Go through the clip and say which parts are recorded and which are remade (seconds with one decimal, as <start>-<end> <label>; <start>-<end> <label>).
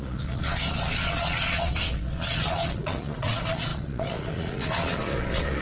0.0-5.6 remade